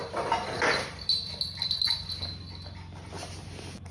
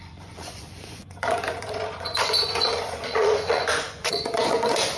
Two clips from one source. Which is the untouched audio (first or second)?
first